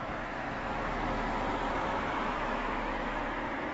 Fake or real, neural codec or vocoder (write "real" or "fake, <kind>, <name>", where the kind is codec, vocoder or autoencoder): fake, autoencoder, DAC-VAE